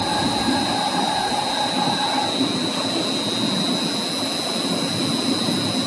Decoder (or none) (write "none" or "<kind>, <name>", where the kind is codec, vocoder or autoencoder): none